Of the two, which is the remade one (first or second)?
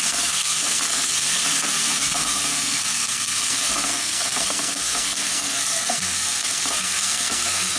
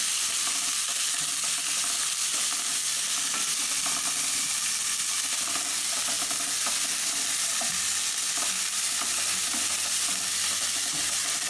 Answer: first